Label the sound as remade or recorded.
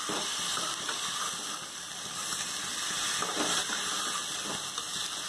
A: recorded